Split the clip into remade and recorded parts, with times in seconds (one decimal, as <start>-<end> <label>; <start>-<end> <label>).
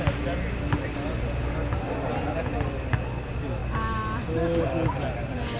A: 0.0-5.6 recorded